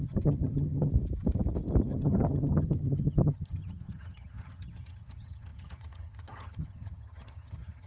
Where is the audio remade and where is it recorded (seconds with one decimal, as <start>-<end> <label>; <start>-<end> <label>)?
0.0-0.9 remade; 0.9-1.9 recorded; 1.9-7.9 remade

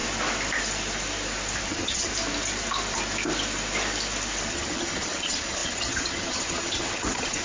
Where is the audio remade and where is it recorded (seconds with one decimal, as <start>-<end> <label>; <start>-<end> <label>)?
0.0-1.7 recorded; 1.7-2.1 remade; 2.1-4.5 recorded; 4.5-7.4 remade

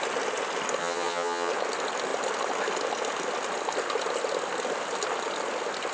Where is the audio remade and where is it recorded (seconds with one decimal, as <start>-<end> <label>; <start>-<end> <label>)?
0.0-0.8 recorded; 0.8-1.5 remade; 1.5-5.9 recorded